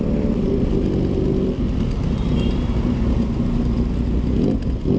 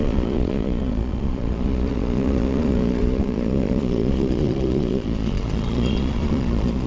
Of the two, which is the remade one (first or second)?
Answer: second